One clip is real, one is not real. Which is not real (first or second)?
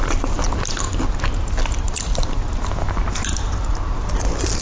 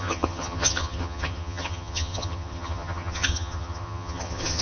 second